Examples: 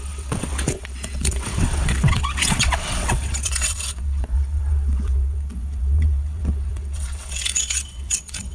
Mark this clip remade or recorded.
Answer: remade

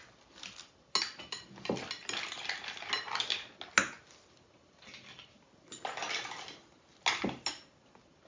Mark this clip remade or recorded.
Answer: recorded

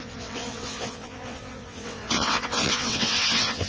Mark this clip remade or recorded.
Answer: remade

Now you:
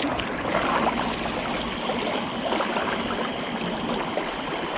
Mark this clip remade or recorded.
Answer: recorded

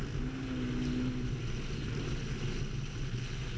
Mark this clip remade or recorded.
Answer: recorded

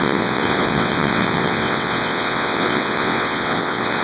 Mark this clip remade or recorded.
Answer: remade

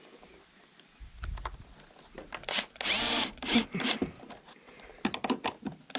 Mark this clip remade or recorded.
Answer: recorded